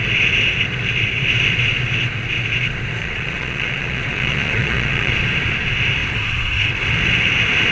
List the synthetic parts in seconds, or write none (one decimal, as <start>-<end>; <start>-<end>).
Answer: 3.0-5.1